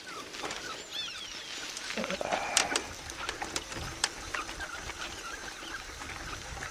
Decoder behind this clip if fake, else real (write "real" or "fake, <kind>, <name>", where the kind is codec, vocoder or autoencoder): real